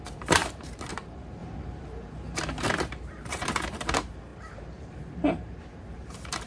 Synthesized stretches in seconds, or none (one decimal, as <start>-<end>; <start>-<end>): 0.0-6.5

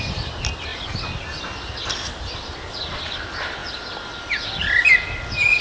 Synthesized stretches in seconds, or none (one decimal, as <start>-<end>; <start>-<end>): none

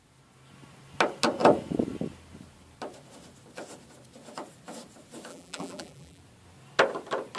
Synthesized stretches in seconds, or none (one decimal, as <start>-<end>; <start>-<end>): 5.3-6.2

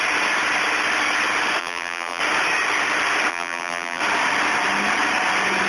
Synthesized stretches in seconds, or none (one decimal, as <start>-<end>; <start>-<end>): 1.6-2.2; 3.3-4.0

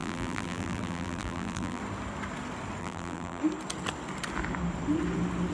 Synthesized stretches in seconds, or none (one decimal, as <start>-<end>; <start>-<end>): 0.0-1.8; 2.8-3.4